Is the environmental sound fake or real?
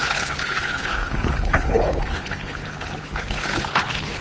fake